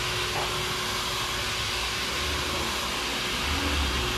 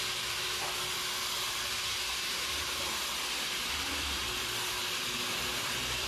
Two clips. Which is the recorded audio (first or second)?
first